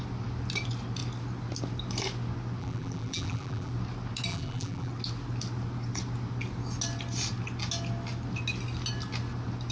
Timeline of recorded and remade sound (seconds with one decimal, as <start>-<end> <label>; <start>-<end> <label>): 0.0-2.6 recorded; 2.6-3.7 remade; 3.7-4.3 recorded; 4.3-4.9 remade; 4.9-9.7 recorded